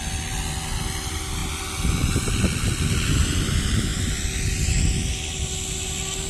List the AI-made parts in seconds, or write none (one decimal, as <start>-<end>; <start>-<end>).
none